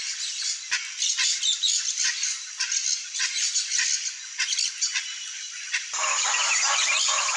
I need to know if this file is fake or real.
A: real